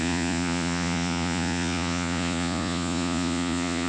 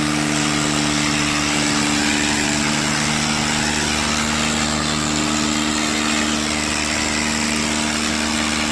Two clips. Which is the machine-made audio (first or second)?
first